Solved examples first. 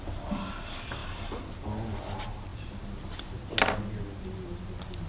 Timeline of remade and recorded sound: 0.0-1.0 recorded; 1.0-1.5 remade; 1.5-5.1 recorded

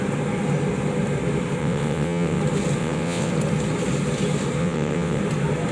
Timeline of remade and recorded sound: 0.0-1.6 recorded; 1.6-2.4 remade; 2.4-2.8 recorded; 2.8-3.3 remade; 3.3-4.6 recorded; 4.6-5.2 remade; 5.2-5.7 recorded

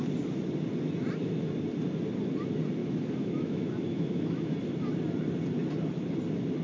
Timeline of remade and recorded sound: 0.0-2.8 recorded; 2.8-4.5 remade; 4.5-6.6 recorded